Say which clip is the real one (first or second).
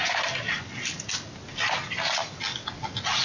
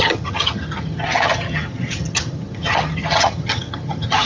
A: first